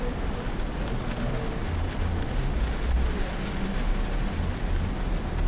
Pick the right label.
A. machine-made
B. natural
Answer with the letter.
B